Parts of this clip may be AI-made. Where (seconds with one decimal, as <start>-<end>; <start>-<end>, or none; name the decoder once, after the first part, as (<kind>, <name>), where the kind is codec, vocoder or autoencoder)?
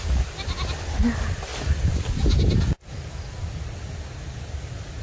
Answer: 1.5-4.5 (vocoder, BigVGAN v2)